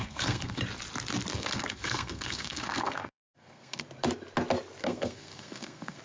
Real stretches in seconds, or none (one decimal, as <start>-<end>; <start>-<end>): 0.6-1.3; 3.8-4.8